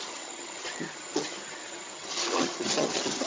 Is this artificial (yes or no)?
yes